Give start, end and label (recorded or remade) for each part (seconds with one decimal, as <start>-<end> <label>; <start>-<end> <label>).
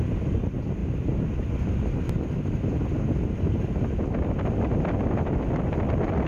0.0-6.3 recorded